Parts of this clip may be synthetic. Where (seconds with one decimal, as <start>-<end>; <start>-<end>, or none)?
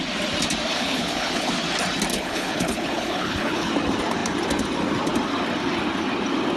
0.7-1.5; 2.1-3.7